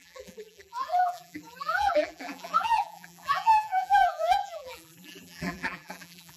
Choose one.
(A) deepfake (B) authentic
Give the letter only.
A